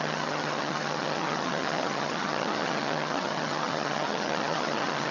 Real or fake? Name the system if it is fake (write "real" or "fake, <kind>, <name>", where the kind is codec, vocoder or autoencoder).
fake, vocoder, HiFi-GAN